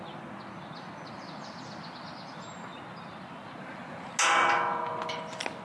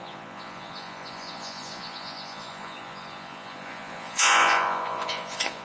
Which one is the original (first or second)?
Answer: first